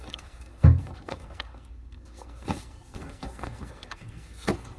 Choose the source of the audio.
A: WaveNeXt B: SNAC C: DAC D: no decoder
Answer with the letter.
B